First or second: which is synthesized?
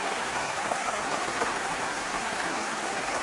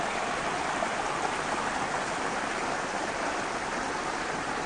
first